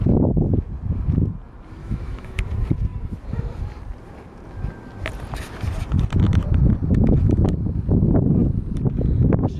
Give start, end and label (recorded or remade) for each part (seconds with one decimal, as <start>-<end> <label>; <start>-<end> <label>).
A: 0.0-1.8 recorded; 1.8-2.4 remade; 2.4-9.6 recorded